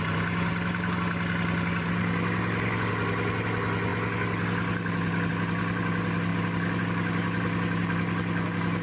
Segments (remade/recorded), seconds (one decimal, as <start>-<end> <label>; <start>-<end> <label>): 0.0-8.8 recorded